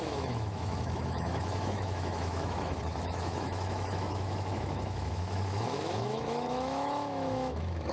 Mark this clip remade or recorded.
remade